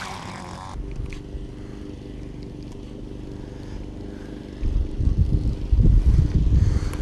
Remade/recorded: recorded